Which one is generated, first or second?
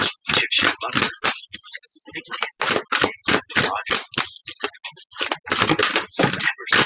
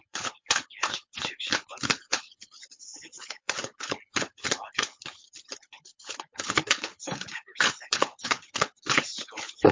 second